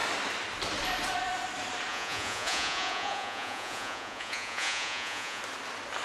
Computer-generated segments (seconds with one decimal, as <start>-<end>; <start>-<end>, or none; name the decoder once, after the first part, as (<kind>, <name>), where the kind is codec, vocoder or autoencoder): 1.9-5.4 (vocoder, Vocos)